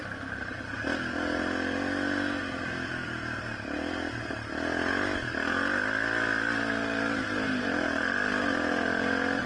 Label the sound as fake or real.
real